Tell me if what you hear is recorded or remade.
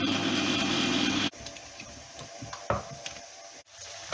remade